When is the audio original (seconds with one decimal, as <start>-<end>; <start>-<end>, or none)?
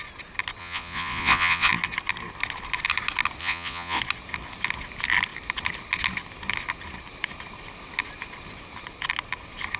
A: 0.0-0.6; 1.7-3.4; 4.0-9.8